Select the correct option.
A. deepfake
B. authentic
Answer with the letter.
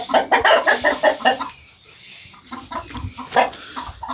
B